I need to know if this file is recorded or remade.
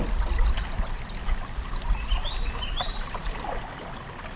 recorded